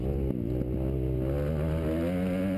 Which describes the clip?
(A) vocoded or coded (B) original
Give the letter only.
B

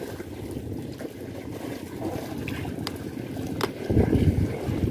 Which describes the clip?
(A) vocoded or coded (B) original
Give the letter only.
B